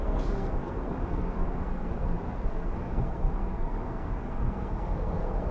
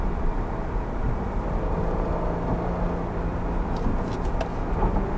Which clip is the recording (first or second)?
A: second